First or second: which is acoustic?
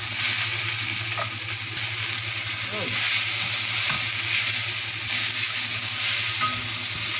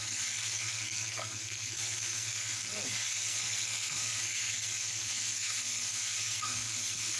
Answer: first